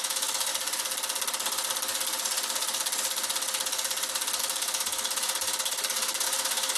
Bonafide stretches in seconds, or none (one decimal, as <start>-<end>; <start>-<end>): 0.5-4.4